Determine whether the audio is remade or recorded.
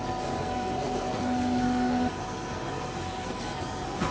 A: remade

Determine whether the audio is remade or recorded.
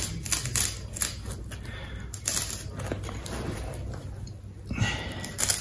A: recorded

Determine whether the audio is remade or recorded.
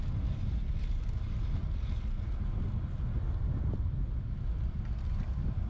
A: recorded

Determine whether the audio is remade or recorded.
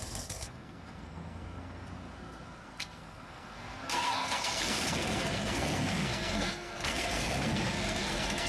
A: remade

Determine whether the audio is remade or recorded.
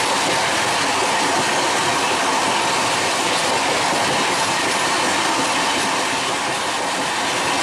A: recorded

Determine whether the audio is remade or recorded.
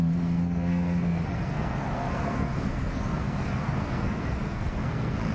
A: remade